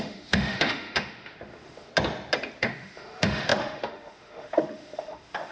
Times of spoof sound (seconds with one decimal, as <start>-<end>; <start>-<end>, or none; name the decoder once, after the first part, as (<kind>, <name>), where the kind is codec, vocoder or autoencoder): 0.0-1.9 (autoencoder, DAC-VAE); 2.6-5.5